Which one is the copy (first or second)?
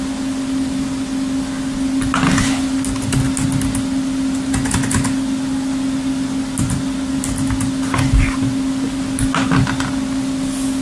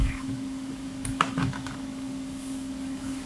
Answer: second